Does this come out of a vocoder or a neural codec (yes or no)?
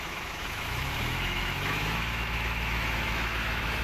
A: yes